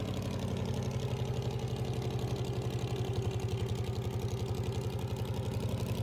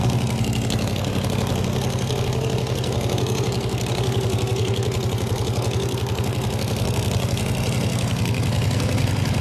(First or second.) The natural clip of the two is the first